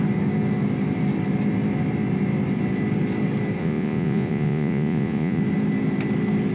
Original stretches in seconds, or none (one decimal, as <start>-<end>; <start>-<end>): 0.0-3.6; 5.4-6.5